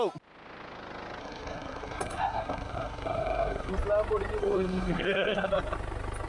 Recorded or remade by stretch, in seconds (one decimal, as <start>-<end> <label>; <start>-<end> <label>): 0.0-1.2 recorded; 1.2-3.7 remade; 3.7-4.4 recorded; 4.4-5.5 remade; 5.5-6.3 recorded